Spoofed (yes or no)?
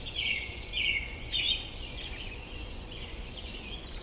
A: yes